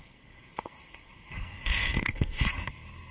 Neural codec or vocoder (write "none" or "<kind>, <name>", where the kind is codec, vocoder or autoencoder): codec, SNAC